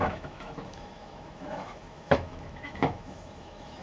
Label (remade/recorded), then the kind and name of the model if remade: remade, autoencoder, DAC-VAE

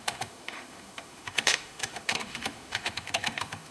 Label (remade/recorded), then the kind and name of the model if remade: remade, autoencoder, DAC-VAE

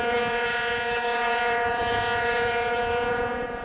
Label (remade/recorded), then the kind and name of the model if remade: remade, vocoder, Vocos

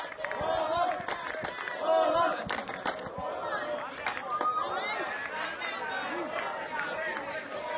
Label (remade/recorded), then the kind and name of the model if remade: recorded